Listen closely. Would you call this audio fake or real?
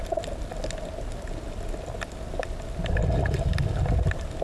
real